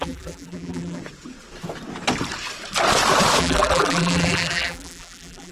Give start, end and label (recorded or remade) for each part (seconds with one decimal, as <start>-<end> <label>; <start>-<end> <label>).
0.0-1.0 remade; 1.0-3.4 recorded; 3.4-5.5 remade